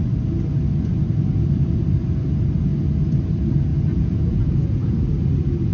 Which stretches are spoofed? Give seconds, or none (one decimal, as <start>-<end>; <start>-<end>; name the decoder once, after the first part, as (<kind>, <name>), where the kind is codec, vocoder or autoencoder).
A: 3.7-5.1 (vocoder, Vocos)